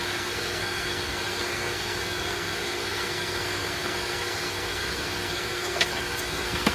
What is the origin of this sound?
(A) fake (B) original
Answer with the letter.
A